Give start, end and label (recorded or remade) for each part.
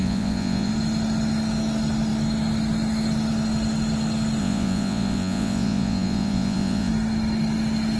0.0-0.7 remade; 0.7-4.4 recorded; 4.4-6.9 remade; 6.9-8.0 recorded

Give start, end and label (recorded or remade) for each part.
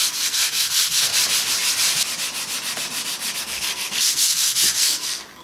0.0-1.1 remade; 1.1-3.4 recorded; 3.4-5.4 remade